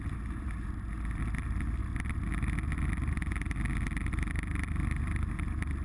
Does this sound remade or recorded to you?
recorded